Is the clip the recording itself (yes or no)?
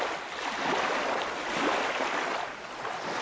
yes